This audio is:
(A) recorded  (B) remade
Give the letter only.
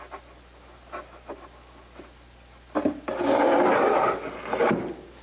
A